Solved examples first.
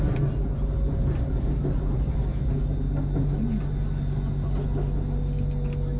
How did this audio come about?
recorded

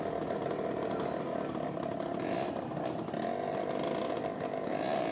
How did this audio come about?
recorded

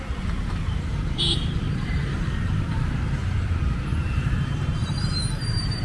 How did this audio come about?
remade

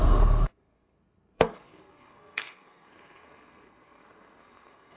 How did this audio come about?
remade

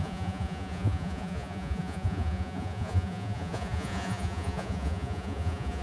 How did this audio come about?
remade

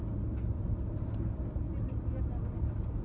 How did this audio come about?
recorded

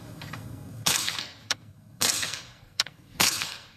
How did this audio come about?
remade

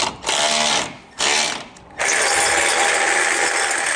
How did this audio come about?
recorded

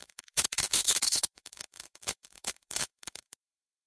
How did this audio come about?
remade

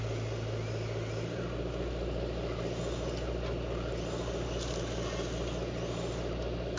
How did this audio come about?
recorded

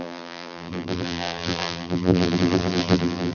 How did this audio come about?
remade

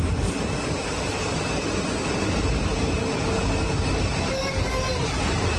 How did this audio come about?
recorded